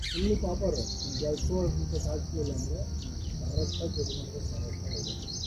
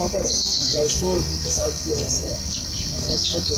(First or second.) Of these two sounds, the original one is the first